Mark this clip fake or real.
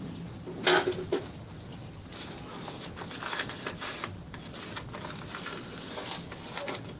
real